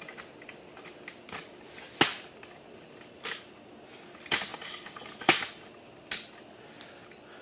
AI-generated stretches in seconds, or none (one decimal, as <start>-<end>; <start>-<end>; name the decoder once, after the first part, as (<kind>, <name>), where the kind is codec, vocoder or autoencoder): none